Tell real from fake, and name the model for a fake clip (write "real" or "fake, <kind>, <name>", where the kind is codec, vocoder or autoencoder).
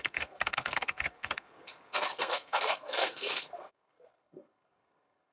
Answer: fake, codec, SNAC